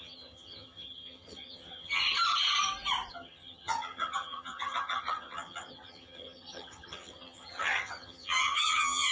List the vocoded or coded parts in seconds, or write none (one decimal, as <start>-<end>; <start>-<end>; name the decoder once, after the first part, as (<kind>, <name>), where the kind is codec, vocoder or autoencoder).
0.0-2.0 (vocoder, HiFi-GAN); 3.1-9.1